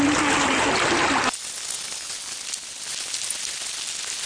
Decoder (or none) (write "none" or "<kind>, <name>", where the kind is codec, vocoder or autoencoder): none